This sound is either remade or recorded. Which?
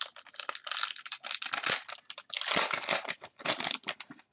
recorded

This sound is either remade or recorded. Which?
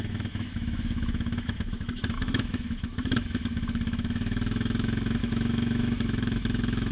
remade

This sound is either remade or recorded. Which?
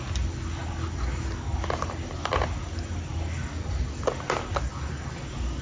recorded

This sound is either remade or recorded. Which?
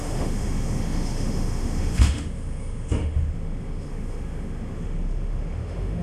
remade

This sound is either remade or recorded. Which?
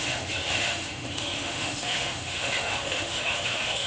remade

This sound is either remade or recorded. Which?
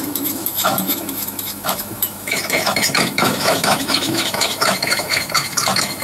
remade